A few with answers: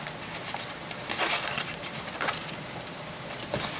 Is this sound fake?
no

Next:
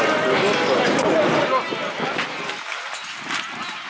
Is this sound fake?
no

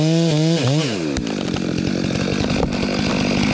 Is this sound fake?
no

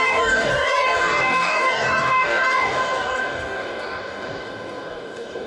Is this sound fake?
yes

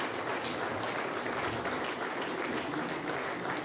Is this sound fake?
no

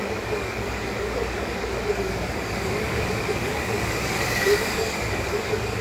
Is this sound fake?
yes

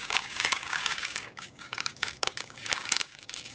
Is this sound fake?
yes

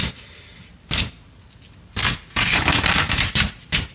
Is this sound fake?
no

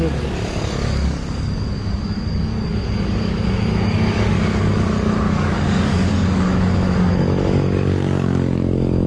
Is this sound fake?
yes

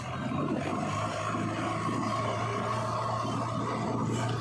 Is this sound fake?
no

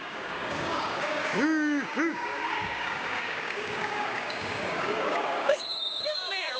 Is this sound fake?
yes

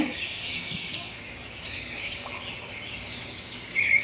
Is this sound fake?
yes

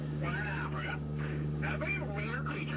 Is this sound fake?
yes